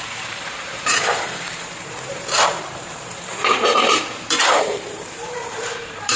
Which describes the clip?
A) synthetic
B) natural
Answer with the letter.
A